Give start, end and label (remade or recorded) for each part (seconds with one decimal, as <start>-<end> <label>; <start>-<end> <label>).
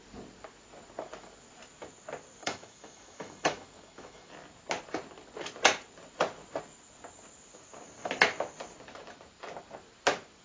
0.0-2.4 recorded; 2.4-4.3 remade; 4.3-10.4 recorded